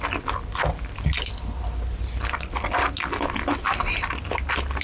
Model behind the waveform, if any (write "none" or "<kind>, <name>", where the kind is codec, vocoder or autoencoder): none